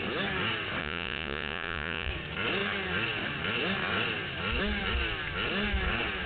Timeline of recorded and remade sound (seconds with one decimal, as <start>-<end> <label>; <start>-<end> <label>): 0.0-0.8 recorded; 0.8-2.1 remade; 2.1-6.3 recorded